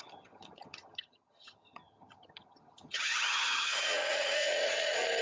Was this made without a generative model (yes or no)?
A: no